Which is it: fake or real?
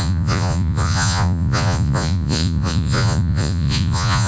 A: fake